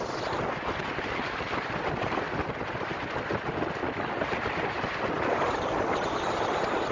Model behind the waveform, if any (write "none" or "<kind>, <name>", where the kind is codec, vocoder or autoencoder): none